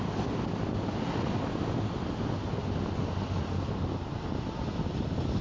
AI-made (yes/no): no